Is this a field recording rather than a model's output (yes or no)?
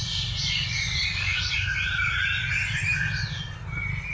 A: yes